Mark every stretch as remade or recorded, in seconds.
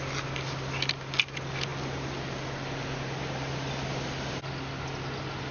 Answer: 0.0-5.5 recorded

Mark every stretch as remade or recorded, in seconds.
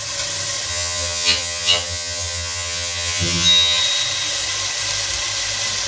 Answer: 0.0-0.7 recorded; 0.7-3.8 remade; 3.8-5.9 recorded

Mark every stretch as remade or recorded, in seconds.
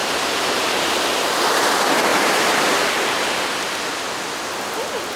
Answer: 0.0-1.4 remade; 1.4-2.1 recorded; 2.1-2.6 remade; 2.6-5.2 recorded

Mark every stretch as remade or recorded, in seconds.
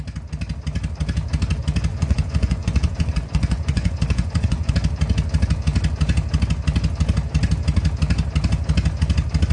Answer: 0.0-1.9 recorded; 1.9-4.7 remade; 4.7-9.5 recorded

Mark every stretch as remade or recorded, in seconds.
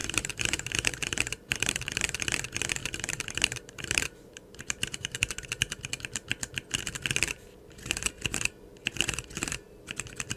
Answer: 0.0-2.2 remade; 2.2-2.8 recorded; 2.8-5.2 remade; 5.2-10.4 recorded